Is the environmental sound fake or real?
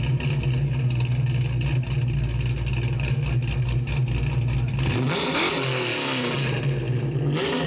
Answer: real